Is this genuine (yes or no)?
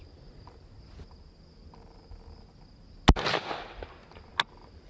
yes